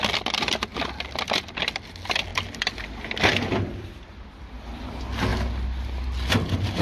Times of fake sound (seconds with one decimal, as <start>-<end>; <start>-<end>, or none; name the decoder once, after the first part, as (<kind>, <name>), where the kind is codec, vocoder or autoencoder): 2.3-4.3 (vocoder, BigVGAN v2)